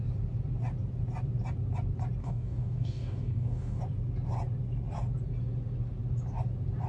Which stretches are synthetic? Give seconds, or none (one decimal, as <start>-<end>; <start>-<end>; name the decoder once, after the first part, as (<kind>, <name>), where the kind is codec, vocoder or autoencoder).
2.2-3.8 (codec, DAC)